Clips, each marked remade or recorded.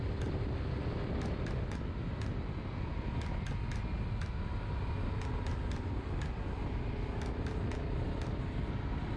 recorded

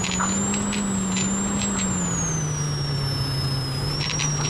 recorded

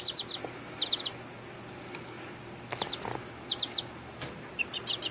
recorded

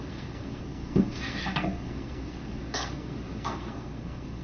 remade